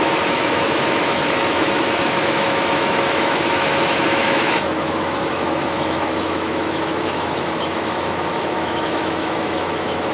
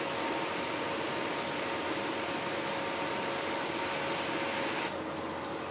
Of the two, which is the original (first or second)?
second